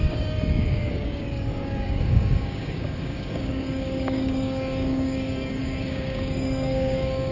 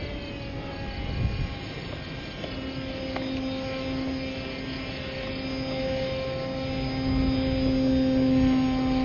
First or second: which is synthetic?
first